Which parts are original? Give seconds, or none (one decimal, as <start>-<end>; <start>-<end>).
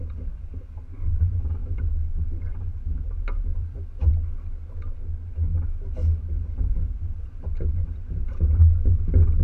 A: 0.0-1.6; 2.1-3.5; 4.1-9.4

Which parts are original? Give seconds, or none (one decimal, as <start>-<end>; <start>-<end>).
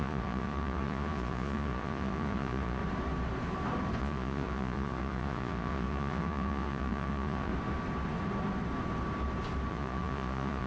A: 2.8-4.0; 7.5-9.7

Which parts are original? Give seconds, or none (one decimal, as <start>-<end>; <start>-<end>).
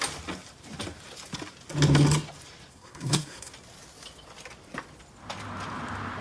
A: 0.0-2.7; 3.5-6.2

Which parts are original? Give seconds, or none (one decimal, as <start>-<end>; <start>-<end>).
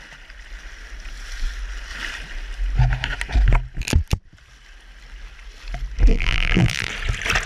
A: 0.0-6.1; 6.9-7.5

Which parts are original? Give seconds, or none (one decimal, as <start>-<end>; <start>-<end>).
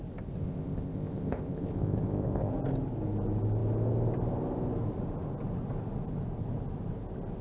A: 0.0-0.4; 2.5-7.4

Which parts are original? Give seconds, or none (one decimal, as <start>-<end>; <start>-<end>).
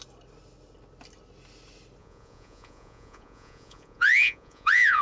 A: 0.0-2.0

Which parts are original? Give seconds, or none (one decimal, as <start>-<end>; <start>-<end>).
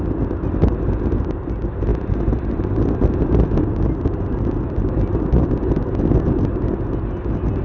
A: 0.0-7.6